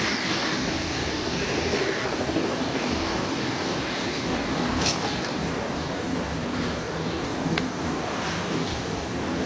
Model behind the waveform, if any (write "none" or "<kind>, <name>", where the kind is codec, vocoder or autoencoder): codec, DAC